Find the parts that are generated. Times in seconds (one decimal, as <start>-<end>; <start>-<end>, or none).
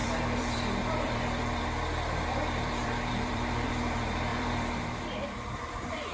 0.0-3.7; 4.3-5.5